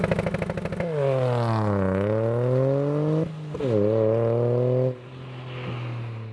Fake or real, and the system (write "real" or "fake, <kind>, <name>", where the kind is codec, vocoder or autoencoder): real